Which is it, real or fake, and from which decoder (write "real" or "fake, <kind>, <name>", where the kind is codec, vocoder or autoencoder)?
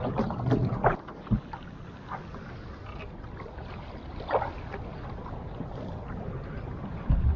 real